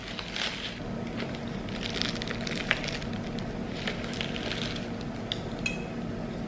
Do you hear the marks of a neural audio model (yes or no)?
no